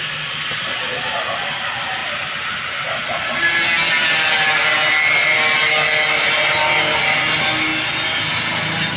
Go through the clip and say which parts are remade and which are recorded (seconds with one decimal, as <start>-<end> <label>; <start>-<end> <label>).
0.0-9.0 recorded